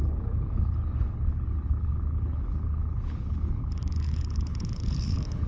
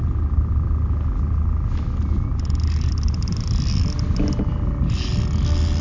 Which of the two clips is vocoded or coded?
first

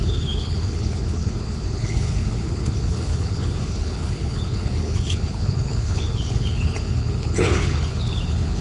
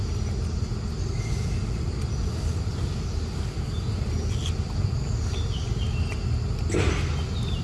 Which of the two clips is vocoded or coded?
first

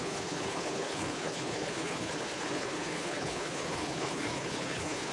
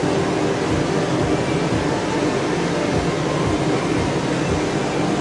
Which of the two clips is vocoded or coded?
first